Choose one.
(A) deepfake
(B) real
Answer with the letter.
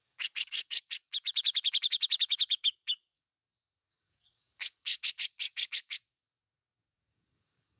A